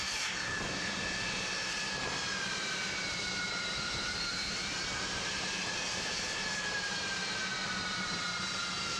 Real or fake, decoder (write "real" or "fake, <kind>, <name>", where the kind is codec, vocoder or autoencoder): fake, vocoder, BigVGAN v2